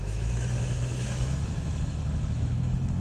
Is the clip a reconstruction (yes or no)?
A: yes